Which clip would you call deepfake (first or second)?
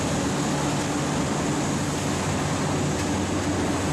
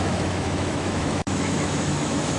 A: second